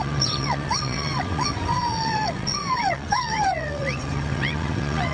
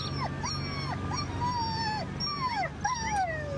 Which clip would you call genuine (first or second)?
second